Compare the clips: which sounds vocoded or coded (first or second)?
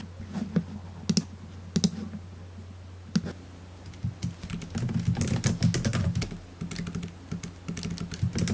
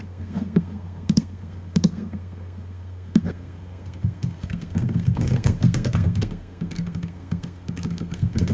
second